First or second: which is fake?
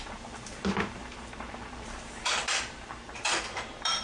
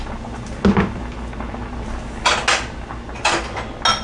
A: first